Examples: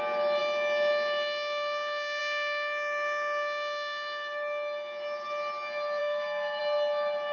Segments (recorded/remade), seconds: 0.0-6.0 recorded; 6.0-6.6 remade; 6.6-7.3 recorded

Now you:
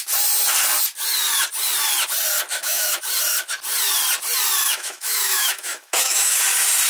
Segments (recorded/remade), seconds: 0.0-2.5 recorded; 2.5-3.0 remade; 3.0-4.6 recorded; 4.6-6.4 remade; 6.4-6.9 recorded

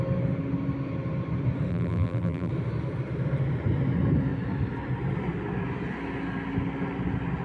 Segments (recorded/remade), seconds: 0.0-1.7 recorded; 1.7-2.5 remade; 2.5-7.4 recorded

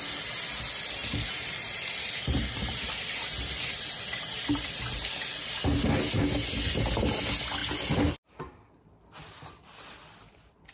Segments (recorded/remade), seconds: 0.0-1.0 recorded; 1.0-5.1 remade; 5.1-10.7 recorded

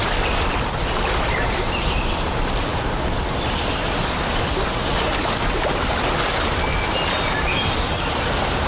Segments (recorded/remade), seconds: 0.0-8.7 recorded

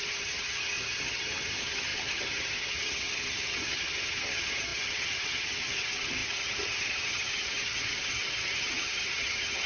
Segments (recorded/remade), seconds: 0.0-9.7 remade

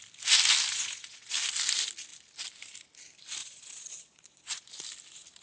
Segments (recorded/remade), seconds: 0.0-0.7 recorded; 0.7-1.3 remade; 1.3-3.4 recorded; 3.4-4.7 remade; 4.7-5.4 recorded